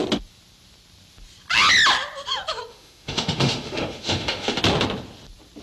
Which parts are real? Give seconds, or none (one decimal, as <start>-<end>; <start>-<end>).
0.0-2.7; 4.6-5.6